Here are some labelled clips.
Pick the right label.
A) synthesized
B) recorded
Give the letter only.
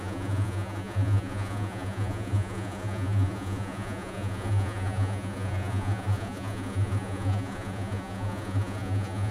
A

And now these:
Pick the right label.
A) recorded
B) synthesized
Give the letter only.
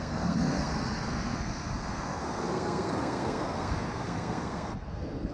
B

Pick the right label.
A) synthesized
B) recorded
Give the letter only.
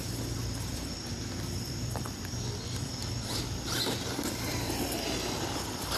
A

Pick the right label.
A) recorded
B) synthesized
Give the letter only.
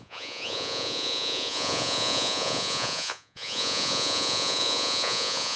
B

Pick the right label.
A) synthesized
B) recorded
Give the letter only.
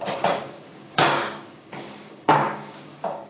A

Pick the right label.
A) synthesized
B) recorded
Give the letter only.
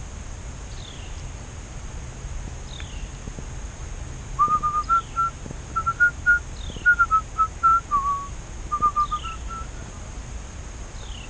B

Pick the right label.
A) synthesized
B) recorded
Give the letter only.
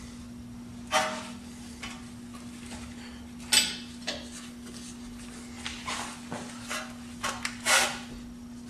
B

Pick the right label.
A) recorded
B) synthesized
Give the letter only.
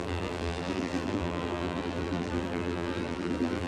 B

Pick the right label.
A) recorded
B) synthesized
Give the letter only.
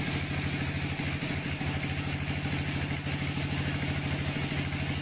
A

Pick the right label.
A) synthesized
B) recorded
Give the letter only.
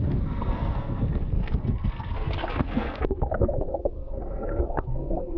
A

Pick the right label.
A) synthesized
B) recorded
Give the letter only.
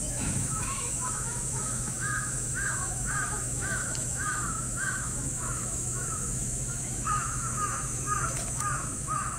A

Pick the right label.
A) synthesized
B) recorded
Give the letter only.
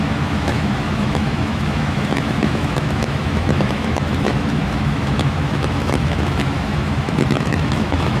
A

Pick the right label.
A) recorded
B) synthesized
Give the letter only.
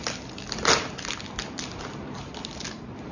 A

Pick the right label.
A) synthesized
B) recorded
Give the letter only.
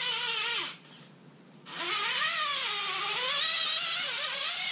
B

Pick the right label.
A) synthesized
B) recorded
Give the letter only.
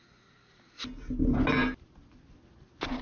B